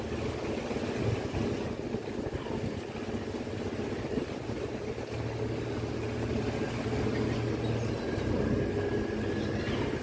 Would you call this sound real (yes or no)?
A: yes